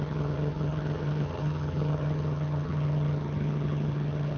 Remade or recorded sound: remade